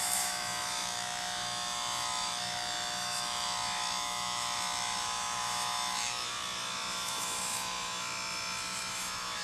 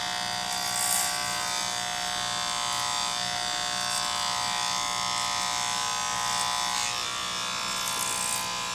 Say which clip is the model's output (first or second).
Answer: first